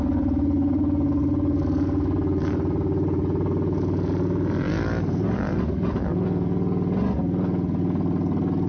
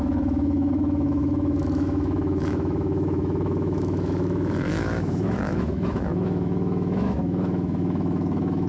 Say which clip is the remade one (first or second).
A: second